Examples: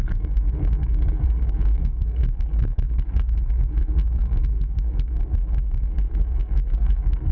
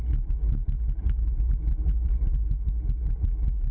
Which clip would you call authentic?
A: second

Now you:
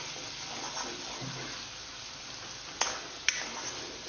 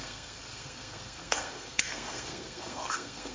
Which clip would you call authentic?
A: first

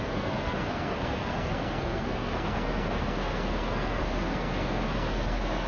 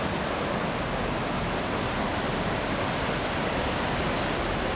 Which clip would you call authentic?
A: second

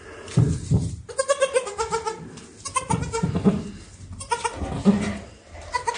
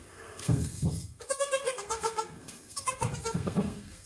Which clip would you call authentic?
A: first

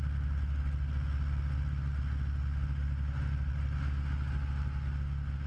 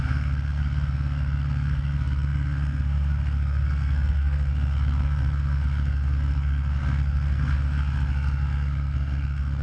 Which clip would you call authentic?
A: first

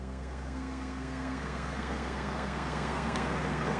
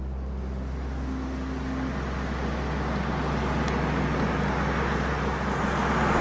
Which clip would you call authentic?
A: second